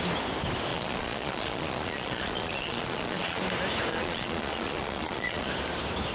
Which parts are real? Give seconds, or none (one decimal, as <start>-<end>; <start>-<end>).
0.0-0.7; 3.4-3.9; 5.5-6.1